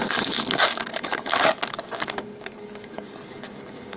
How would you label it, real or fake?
fake